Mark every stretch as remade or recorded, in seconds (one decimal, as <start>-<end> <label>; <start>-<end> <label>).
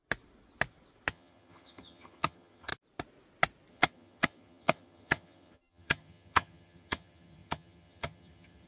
0.0-1.1 recorded; 1.1-2.7 remade; 2.7-3.7 recorded; 3.7-8.7 remade